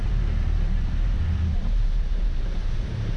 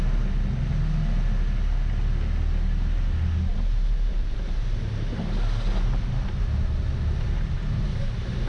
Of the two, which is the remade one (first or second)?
first